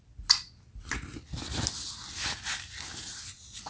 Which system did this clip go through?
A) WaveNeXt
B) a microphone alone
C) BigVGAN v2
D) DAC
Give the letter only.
B